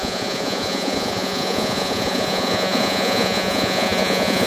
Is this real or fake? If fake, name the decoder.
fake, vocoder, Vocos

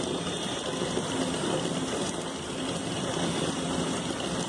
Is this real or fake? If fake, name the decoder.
fake, vocoder, BigVGAN v2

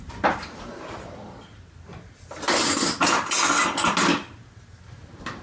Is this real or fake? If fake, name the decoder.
real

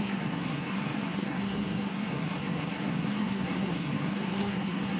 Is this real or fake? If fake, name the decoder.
fake, codec, SNAC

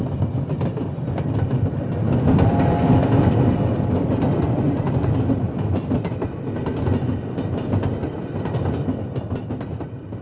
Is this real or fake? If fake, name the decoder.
real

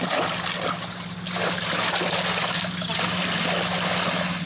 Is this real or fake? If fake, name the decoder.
real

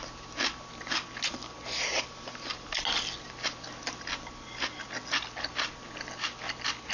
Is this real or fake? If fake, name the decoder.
real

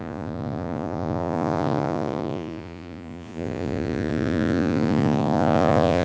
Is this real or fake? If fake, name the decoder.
fake, vocoder, Vocos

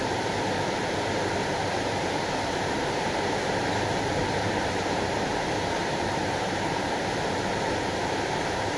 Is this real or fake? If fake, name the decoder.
fake, vocoder, BigVGAN v2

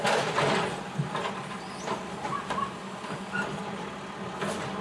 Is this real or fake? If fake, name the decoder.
real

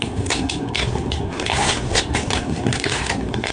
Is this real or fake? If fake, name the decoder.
fake, codec, SNAC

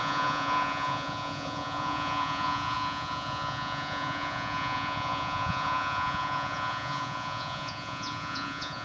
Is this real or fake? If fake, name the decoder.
fake, vocoder, Vocos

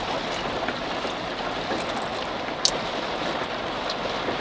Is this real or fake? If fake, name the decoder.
real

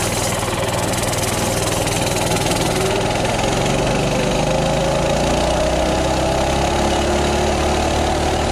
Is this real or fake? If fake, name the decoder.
real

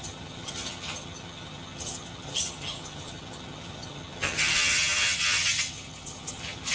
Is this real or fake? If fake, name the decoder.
fake, vocoder, HiFi-GAN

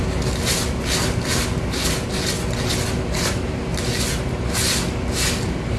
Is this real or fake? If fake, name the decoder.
real